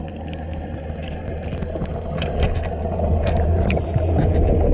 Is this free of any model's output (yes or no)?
no